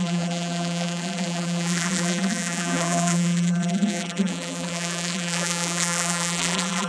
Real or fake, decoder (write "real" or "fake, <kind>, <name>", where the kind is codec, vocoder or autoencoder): fake, vocoder, BigVGAN v2